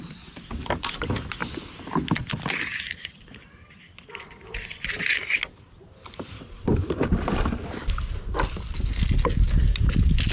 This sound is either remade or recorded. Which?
recorded